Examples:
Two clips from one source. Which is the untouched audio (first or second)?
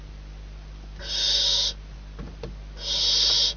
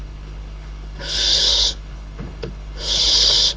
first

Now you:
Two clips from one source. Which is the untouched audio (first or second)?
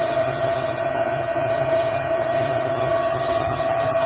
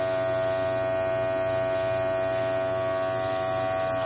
second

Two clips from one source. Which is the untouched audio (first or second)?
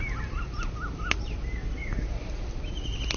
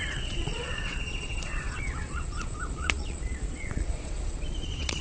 first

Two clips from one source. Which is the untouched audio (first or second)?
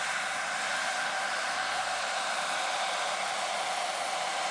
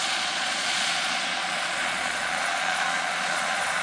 first